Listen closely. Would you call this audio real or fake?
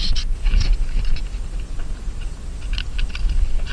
real